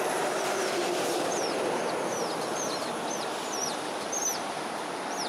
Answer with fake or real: fake